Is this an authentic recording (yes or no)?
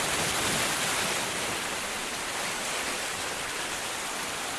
yes